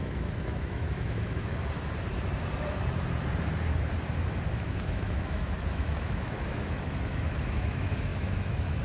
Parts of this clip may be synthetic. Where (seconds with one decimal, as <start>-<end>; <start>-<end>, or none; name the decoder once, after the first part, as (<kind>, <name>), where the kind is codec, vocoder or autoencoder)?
0.0-1.5 (autoencoder, DAC-VAE); 4.5-8.8